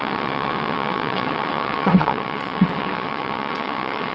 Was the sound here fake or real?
fake